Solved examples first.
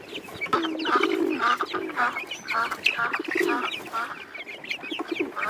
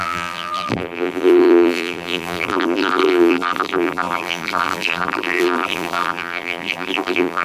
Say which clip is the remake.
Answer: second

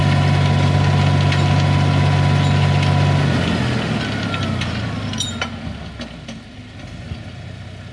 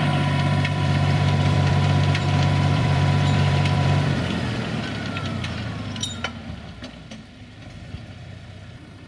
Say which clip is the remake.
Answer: second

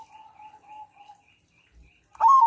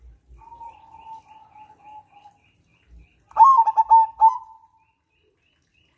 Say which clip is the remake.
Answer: first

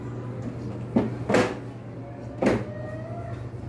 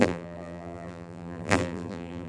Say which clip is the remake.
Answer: second